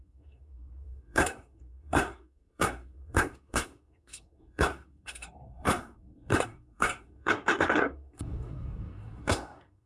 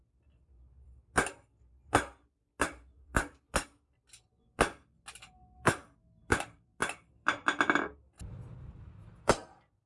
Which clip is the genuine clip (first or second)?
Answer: second